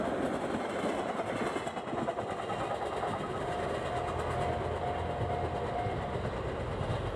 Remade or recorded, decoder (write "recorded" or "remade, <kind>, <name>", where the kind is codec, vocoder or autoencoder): recorded